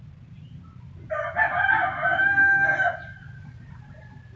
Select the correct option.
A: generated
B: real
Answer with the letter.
B